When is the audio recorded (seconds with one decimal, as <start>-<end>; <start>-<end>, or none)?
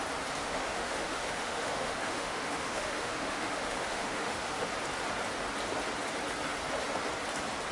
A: 0.0-0.4; 4.7-7.7